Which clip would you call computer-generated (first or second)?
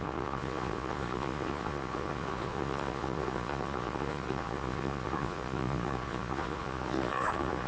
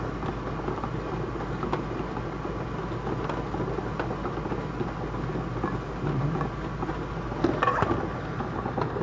first